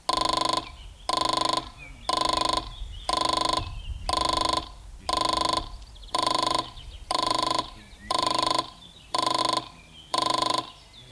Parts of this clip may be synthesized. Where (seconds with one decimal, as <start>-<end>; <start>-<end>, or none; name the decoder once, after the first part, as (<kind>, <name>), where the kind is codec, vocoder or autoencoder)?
6.0-9.4 (vocoder, BigVGAN v2); 10.1-10.7